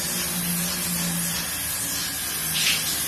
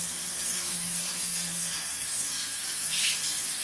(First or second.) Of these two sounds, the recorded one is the first